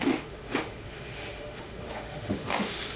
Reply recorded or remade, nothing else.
remade